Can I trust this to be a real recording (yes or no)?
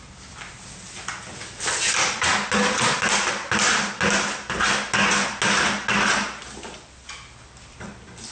yes